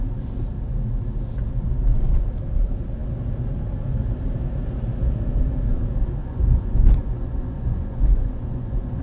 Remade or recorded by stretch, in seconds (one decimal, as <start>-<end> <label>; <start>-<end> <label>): 0.0-6.2 recorded; 6.2-9.0 remade